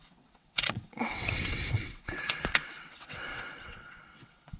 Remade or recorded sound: remade